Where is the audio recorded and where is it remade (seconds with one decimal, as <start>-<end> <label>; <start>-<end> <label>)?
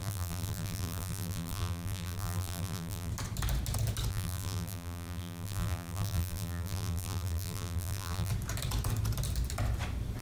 0.0-3.1 remade; 3.1-4.1 recorded; 4.1-8.3 remade; 8.3-10.2 recorded